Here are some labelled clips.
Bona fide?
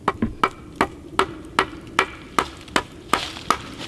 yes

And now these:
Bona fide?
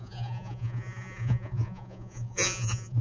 no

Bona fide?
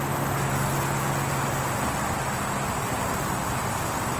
yes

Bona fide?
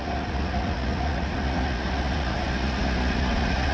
no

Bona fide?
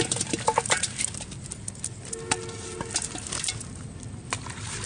yes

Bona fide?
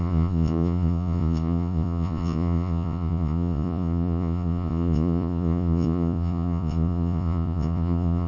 no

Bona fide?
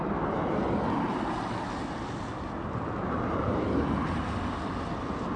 yes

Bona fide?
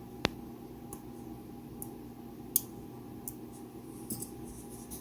yes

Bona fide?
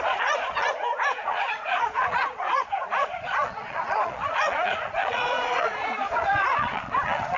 no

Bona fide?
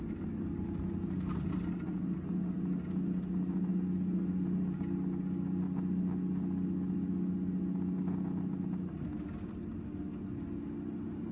yes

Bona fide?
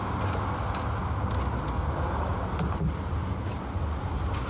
yes